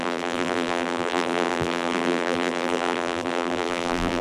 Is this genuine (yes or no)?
no